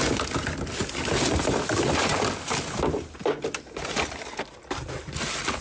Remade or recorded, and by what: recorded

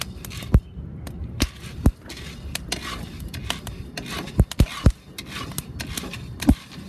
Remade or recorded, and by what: recorded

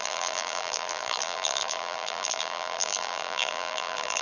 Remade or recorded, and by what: remade, vocoder, BigVGAN v2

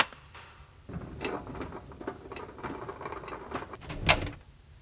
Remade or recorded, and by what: recorded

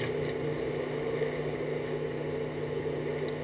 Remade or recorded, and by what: recorded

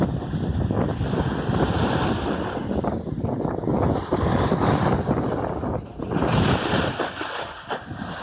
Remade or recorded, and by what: recorded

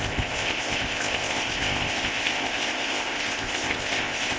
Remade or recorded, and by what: remade, codec, ZipCodec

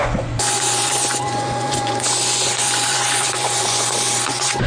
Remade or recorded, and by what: remade, vocoder, Vocos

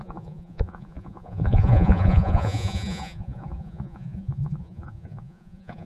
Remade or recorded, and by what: remade, vocoder, Vocos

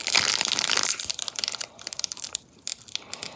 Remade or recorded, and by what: recorded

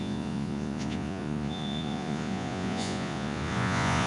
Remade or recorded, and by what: remade, vocoder, Vocos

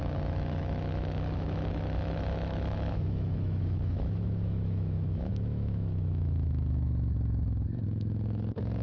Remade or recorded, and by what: remade, autoencoder, DAC-VAE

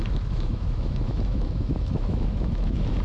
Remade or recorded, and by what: remade, autoencoder, DAC-VAE